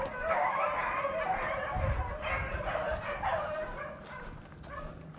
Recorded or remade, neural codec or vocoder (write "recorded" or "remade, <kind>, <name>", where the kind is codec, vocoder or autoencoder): recorded